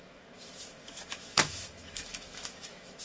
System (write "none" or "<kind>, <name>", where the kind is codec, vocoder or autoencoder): autoencoder, DAC-VAE